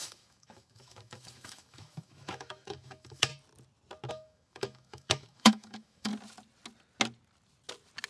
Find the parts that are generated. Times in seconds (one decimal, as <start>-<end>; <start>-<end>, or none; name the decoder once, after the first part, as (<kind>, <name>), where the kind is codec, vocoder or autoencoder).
0.0-3.3 (autoencoder, DAC-VAE); 4.1-6.1